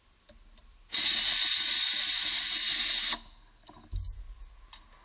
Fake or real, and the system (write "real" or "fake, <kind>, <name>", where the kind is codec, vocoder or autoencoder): real